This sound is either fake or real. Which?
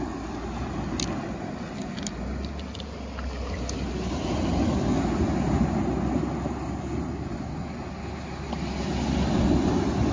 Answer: real